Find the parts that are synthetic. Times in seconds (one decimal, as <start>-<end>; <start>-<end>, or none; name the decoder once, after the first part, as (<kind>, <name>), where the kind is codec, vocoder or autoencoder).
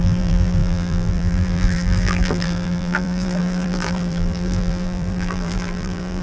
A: 0.0-6.2 (vocoder, BigVGAN v2)